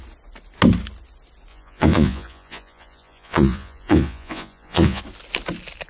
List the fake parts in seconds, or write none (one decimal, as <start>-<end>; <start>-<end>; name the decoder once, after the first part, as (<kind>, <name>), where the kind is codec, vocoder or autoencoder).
1.5-5.0 (vocoder, Vocos)